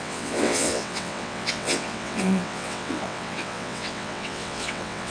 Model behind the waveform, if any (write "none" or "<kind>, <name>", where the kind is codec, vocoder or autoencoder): vocoder, WaveNeXt